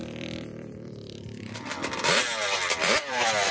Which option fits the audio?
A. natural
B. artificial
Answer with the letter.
B